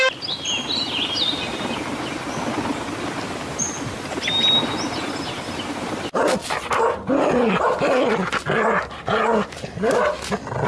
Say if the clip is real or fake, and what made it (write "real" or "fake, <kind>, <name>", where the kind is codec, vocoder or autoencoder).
real